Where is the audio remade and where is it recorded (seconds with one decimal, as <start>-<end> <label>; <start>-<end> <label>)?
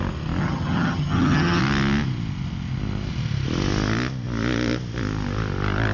0.0-0.4 recorded; 0.4-1.6 remade; 1.6-5.9 recorded